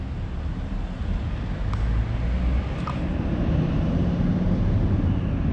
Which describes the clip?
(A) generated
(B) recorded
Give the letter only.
B